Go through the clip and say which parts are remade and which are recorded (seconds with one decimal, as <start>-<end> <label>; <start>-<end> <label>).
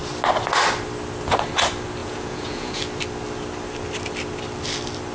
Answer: 0.0-2.0 recorded; 2.0-2.8 remade; 2.8-5.1 recorded